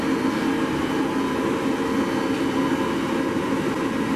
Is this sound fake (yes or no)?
no